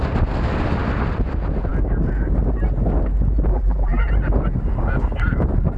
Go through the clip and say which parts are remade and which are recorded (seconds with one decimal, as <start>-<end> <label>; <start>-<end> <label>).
0.0-3.5 recorded; 3.5-4.0 remade; 4.0-5.8 recorded